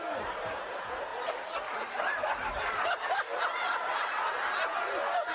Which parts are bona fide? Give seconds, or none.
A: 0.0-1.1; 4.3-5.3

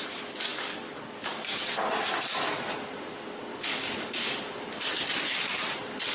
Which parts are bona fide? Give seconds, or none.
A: 0.0-0.5; 1.6-3.5; 4.1-6.1

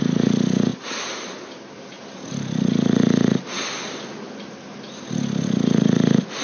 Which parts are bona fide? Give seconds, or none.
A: 0.0-6.4

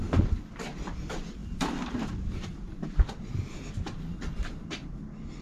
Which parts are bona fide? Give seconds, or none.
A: 0.0-5.4